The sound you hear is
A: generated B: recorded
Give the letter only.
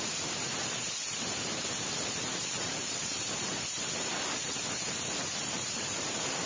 A